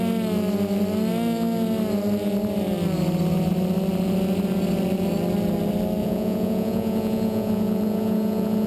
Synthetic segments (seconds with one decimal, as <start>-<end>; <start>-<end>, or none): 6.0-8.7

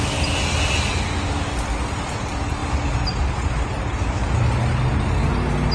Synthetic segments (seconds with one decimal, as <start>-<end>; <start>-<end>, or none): none

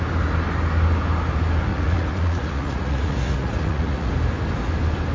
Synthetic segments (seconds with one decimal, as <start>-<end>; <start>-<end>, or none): 1.7-4.1